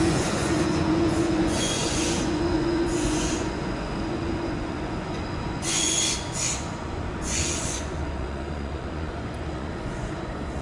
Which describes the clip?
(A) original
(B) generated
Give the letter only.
B